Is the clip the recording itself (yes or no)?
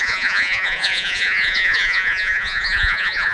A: no